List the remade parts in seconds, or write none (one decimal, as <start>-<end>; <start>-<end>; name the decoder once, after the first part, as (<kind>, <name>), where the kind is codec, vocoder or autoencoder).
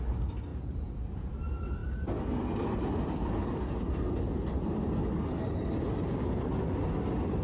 0.5-1.3 (vocoder, Vocos)